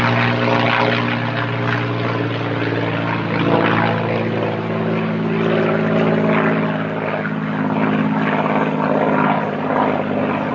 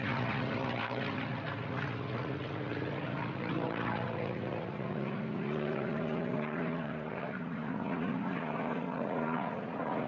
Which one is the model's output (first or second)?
second